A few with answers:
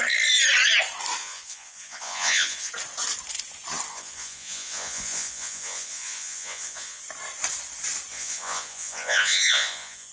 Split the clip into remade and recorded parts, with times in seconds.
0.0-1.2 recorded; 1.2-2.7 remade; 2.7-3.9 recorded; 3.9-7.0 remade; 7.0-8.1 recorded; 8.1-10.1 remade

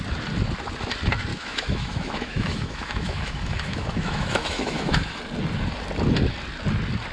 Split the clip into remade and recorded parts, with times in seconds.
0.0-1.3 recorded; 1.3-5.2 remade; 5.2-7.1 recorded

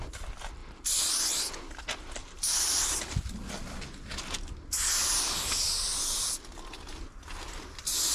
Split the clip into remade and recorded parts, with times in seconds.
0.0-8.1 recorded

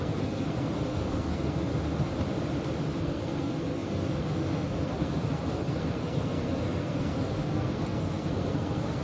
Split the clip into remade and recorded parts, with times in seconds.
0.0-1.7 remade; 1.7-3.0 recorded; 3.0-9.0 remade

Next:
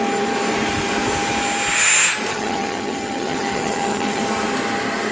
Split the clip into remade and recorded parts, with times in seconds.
0.0-2.3 recorded; 2.3-4.2 remade; 4.2-5.1 recorded

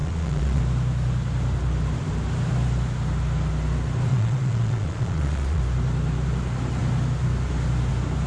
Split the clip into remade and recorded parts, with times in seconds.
0.0-0.6 remade; 0.6-4.1 recorded; 4.1-5.6 remade; 5.6-8.3 recorded

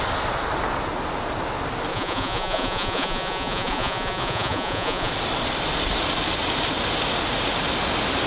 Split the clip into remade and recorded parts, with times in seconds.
0.0-1.9 recorded; 1.9-5.1 remade; 5.1-8.3 recorded